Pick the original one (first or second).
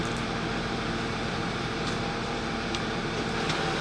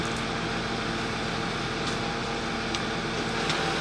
second